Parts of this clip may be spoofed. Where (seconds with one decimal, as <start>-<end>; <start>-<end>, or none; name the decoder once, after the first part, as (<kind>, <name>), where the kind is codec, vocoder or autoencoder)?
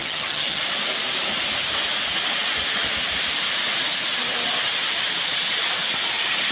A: 0.0-0.6 (vocoder, HiFi-GAN)